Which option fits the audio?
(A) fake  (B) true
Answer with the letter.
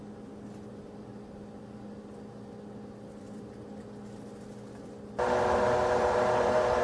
B